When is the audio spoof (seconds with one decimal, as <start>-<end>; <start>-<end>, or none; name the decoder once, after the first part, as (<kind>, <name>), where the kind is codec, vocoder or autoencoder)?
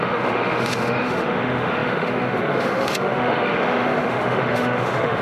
0.0-5.2 (autoencoder, DAC-VAE)